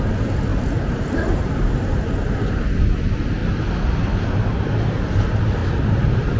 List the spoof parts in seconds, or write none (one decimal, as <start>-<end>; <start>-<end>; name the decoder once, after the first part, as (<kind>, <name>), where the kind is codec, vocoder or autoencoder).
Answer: 0.5-1.4 (vocoder, BigVGAN v2); 5.6-6.4